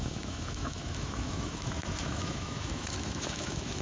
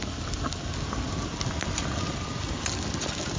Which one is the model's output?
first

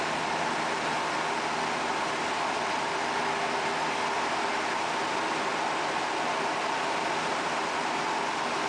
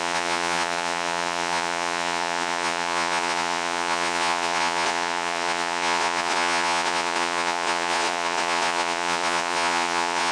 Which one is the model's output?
second